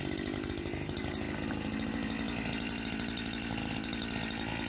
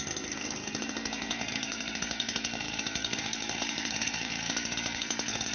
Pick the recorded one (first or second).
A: first